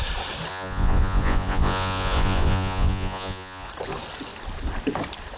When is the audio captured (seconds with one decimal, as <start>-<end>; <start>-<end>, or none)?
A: 0.0-0.5; 3.7-5.4